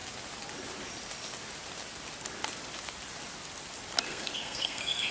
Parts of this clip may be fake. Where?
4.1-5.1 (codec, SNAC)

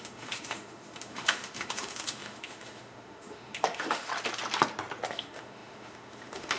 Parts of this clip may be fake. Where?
0.0-4.1 (autoencoder, DAC-VAE); 5.1-6.6